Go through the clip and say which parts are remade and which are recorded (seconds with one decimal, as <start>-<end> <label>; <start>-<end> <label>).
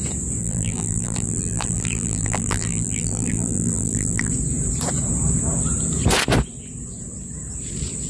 0.0-0.4 recorded; 0.4-4.3 remade; 4.3-8.1 recorded